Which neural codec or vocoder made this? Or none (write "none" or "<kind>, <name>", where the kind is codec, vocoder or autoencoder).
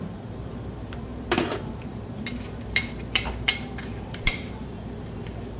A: vocoder, BigVGAN v2